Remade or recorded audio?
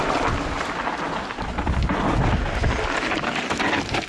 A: recorded